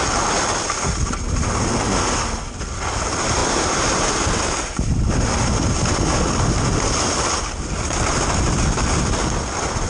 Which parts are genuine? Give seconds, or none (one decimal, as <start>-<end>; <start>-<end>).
0.0-9.9